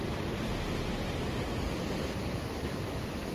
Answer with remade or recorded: recorded